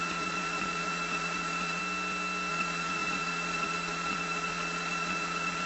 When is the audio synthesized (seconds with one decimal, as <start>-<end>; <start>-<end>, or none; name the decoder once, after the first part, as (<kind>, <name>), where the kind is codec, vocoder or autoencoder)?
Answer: 0.0-1.8 (vocoder, Vocos); 2.5-5.7